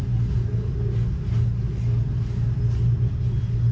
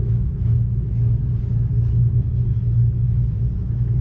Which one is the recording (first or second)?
first